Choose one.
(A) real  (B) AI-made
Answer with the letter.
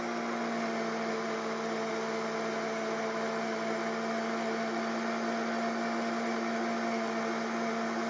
A